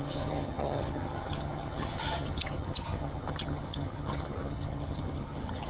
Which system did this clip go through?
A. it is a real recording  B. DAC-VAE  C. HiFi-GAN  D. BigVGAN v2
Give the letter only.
C